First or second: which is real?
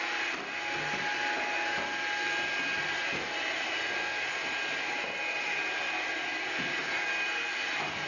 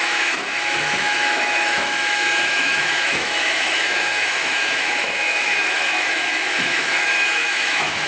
first